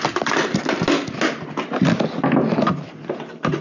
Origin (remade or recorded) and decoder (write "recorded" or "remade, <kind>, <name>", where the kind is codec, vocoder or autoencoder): recorded